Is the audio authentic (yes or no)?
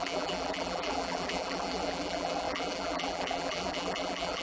no